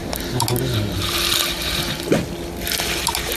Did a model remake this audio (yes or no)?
no